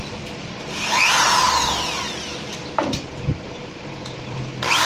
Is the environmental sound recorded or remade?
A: remade